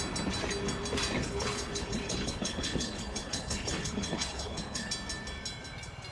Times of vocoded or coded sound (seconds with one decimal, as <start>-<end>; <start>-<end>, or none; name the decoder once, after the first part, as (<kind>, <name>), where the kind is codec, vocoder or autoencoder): 1.2-4.9 (codec, HILCodec)